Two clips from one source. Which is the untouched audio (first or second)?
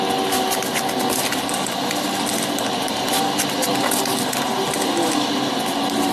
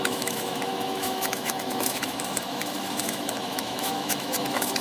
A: first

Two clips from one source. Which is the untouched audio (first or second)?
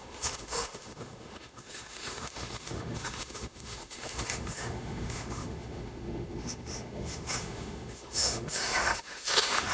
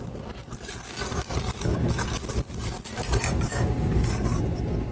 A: second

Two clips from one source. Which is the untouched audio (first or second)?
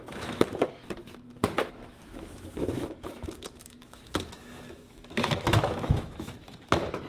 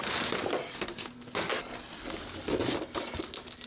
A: second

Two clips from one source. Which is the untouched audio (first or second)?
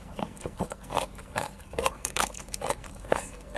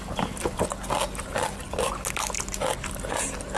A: second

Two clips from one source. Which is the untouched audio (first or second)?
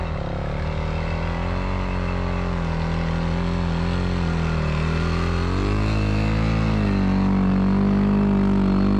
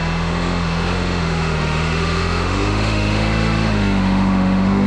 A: first